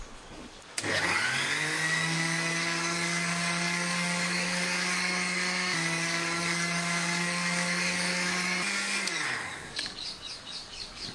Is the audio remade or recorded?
remade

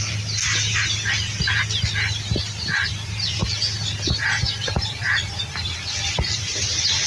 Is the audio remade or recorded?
recorded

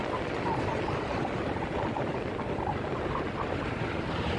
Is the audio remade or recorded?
recorded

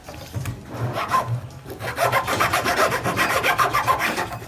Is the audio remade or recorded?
remade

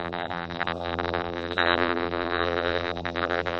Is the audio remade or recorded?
remade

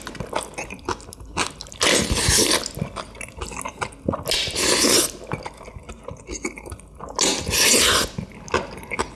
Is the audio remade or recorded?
recorded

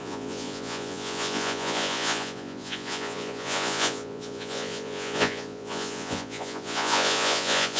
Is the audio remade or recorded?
remade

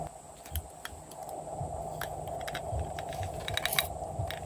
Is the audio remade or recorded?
recorded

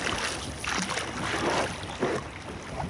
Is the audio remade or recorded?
recorded